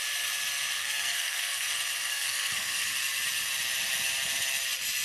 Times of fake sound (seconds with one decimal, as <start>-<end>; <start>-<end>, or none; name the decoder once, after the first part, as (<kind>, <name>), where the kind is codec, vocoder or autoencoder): 0.8-1.7 (codec, SNAC); 2.1-2.9